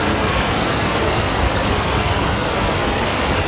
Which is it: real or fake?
fake